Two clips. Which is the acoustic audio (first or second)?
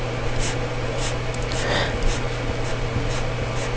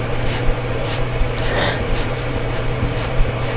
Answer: first